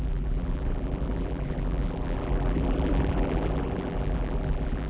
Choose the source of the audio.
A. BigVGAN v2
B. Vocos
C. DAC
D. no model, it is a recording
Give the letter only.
A